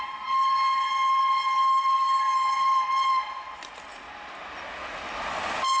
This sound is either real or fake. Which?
real